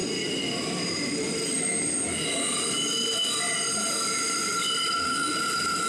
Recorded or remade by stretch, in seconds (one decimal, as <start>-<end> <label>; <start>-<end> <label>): 0.0-5.9 recorded